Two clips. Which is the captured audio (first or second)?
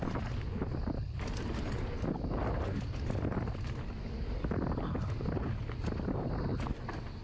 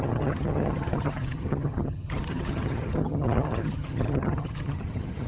first